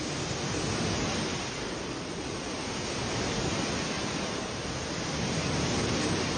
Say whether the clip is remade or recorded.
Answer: remade